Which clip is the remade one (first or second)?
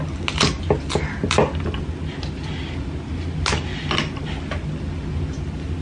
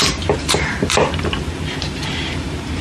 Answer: second